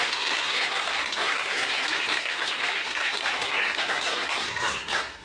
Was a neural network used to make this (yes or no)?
yes